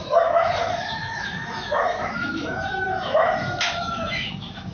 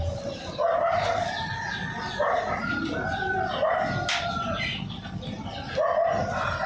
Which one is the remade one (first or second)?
first